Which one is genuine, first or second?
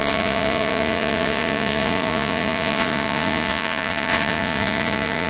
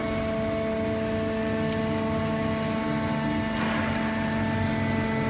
second